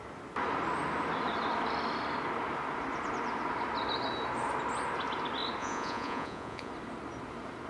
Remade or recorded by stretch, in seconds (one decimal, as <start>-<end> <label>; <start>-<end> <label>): 0.0-5.6 recorded; 5.6-6.7 remade; 6.7-7.7 recorded